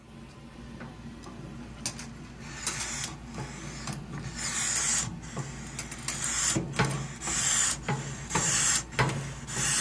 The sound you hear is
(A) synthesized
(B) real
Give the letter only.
B